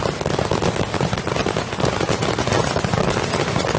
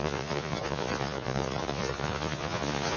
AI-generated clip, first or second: second